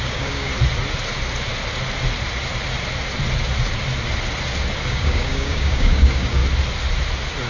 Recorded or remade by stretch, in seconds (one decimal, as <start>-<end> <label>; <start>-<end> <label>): 0.0-0.5 remade; 0.5-4.9 recorded; 4.9-6.4 remade; 6.4-7.5 recorded